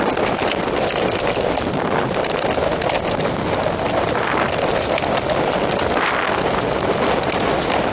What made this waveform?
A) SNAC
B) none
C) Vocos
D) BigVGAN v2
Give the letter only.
B